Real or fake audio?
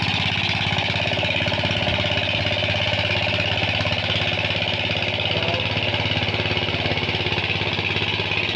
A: real